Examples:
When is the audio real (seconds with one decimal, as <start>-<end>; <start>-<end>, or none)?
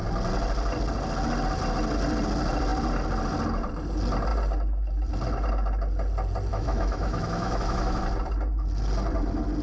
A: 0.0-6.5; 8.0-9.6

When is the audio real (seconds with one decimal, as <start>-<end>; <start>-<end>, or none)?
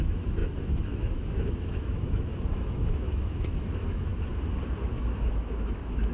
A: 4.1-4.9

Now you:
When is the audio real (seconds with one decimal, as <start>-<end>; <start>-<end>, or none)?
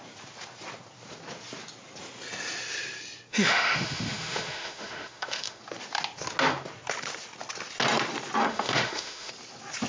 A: 0.0-3.3; 5.6-8.4; 9.3-9.9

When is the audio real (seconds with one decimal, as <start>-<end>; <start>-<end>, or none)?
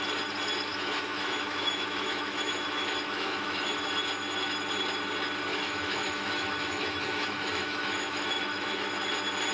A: 0.0-0.7; 3.9-5.5; 8.9-9.5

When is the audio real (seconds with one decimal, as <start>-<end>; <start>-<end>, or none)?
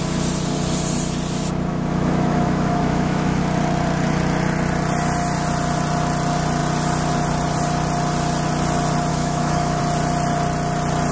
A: 0.0-1.7; 3.4-9.1; 9.8-11.1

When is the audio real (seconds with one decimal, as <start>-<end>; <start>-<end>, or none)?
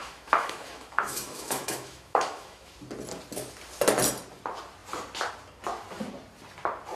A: 2.7-7.0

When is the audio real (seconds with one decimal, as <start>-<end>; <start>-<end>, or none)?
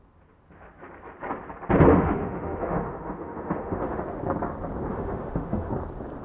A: 0.0-1.9; 4.0-4.9; 5.7-6.2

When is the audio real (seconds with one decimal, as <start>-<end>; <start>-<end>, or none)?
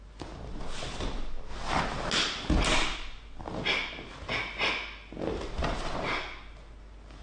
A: 0.0-7.2